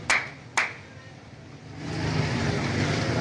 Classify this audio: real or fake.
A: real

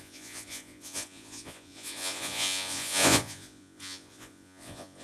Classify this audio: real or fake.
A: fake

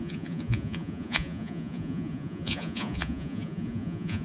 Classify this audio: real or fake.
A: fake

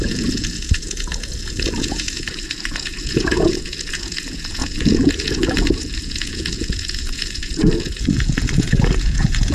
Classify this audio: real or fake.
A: fake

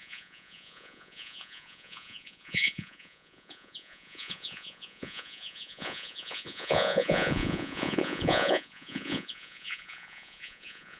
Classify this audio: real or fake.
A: fake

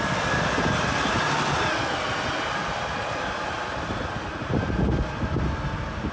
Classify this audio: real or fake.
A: real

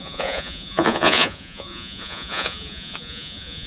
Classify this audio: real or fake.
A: fake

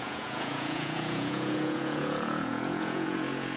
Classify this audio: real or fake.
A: fake